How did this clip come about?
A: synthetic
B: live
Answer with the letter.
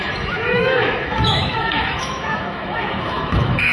A